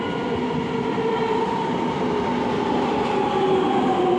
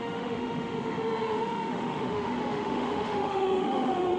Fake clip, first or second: second